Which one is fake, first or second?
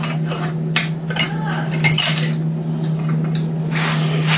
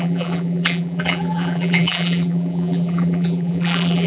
second